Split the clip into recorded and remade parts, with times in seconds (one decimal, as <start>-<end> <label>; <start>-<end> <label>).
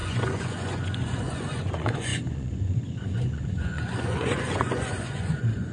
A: 0.0-5.7 remade